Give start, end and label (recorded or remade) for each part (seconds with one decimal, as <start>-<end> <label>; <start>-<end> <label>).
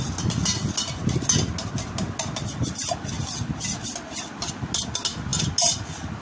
0.0-6.2 recorded